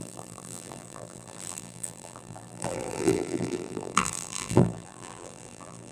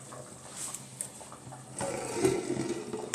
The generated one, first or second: first